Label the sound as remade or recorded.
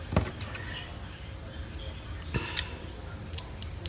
recorded